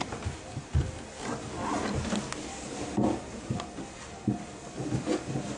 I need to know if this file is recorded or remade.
recorded